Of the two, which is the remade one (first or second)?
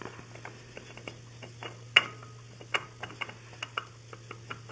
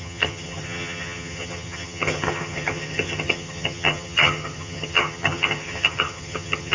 second